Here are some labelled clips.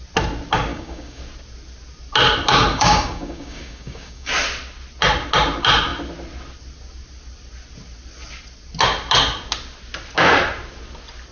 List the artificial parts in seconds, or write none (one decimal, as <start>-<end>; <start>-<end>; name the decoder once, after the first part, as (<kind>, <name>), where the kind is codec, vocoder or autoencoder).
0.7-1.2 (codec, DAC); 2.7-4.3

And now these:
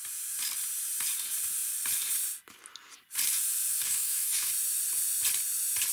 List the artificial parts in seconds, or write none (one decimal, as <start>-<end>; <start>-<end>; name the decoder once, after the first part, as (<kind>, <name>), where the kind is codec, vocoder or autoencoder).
3.8-4.5 (codec, DAC)

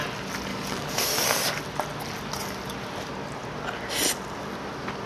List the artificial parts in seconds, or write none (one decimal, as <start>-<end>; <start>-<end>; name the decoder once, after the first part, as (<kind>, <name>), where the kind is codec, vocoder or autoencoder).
0.5-1.0 (codec, DAC)

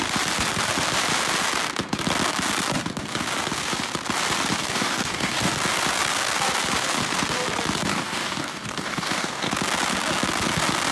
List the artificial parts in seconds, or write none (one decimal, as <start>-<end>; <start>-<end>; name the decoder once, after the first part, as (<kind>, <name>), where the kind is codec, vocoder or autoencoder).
4.6-5.5 (codec, DAC); 7.9-9.5